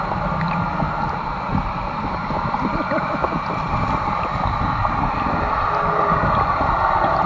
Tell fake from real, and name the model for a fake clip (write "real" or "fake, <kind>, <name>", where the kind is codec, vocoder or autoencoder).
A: fake, vocoder, BigVGAN v2